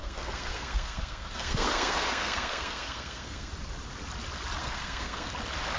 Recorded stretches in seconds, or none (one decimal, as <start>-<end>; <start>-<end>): 3.5-4.6; 5.3-5.8